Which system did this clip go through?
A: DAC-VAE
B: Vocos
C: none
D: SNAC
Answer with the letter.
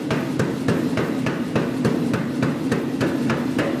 C